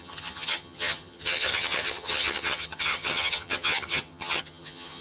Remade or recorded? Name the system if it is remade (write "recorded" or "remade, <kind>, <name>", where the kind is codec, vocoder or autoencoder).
remade, vocoder, HiFi-GAN